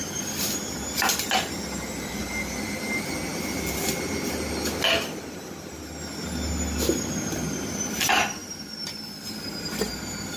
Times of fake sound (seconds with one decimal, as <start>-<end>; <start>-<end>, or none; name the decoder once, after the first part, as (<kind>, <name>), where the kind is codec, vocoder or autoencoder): none